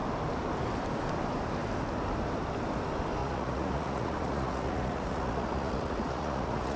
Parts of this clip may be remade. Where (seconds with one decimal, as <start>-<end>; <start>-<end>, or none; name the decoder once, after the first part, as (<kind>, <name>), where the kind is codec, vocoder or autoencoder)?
3.2-6.8 (vocoder, Vocos)